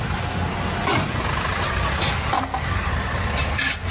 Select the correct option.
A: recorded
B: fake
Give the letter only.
A